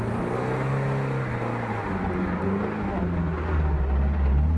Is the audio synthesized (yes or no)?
no